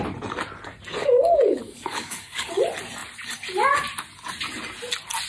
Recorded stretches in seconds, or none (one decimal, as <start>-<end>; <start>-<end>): 0.0-1.0; 2.5-5.3